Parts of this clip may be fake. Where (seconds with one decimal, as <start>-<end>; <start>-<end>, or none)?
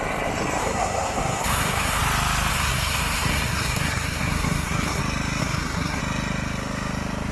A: 0.6-2.0; 2.5-5.0; 5.4-6.0